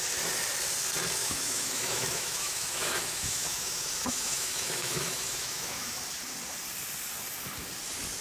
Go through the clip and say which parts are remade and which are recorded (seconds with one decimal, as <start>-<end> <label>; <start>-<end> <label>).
0.0-1.2 recorded; 1.2-6.0 remade; 6.0-8.2 recorded